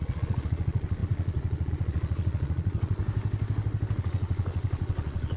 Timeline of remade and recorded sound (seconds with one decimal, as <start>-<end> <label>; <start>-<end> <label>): 0.0-3.0 remade; 3.0-4.0 recorded; 4.0-5.4 remade